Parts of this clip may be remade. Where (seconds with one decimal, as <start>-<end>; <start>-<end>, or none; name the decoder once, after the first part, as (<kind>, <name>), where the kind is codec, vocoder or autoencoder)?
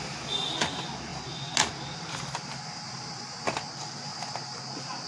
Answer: none